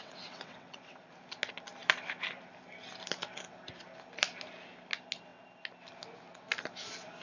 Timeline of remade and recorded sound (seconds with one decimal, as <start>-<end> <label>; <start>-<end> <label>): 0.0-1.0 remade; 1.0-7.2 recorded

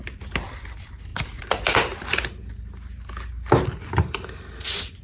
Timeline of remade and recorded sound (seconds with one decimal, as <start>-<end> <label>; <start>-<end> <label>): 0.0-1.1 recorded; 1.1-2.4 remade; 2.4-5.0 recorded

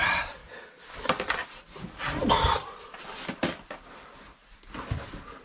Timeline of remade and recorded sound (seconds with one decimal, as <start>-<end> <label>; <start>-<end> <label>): 0.0-0.4 remade; 0.4-3.0 recorded; 3.0-3.4 remade; 3.4-5.4 recorded

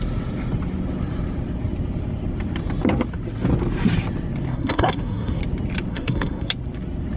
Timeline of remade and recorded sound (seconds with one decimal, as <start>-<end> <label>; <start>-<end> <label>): 0.0-4.5 recorded; 4.5-5.4 remade; 5.4-5.9 recorded; 5.9-6.5 remade; 6.5-7.2 recorded

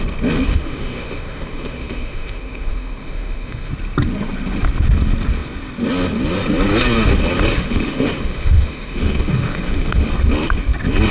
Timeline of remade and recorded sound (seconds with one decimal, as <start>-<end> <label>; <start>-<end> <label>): 0.0-0.5 recorded; 0.5-3.7 remade; 3.7-7.5 recorded; 7.5-10.1 remade; 10.1-11.1 recorded

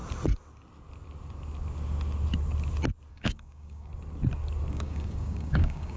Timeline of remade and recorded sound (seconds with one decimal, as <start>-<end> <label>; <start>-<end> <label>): 0.0-3.1 recorded; 3.1-3.9 remade; 3.9-4.7 recorded; 4.7-6.0 remade

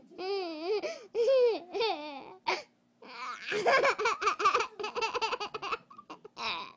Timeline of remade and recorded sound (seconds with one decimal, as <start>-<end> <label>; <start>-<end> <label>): 0.0-6.8 recorded

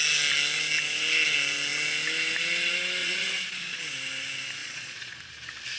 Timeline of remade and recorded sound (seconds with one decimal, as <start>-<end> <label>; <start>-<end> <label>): 0.0-3.0 recorded; 3.0-3.8 remade; 3.8-4.6 recorded; 4.6-5.2 remade; 5.2-5.8 recorded